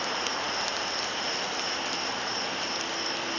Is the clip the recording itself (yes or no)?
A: yes